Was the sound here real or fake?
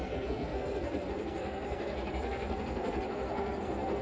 fake